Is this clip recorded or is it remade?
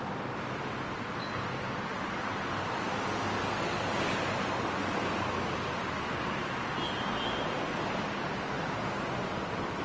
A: recorded